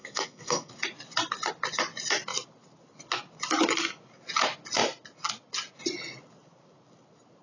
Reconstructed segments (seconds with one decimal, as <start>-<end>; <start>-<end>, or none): 0.0-0.7